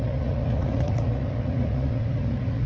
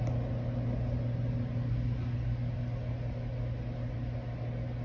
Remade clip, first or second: first